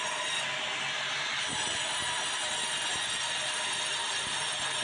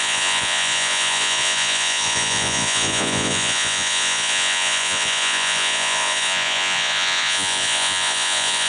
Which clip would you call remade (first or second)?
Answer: second